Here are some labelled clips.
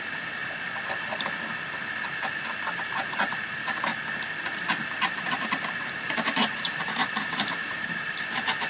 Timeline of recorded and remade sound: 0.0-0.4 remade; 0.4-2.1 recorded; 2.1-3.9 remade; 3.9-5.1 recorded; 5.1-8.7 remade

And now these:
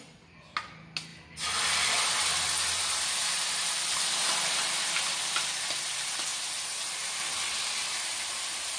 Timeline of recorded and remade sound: 0.0-6.3 recorded; 6.3-7.2 remade; 7.2-7.8 recorded; 7.8-8.8 remade